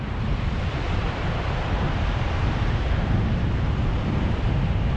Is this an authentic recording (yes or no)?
no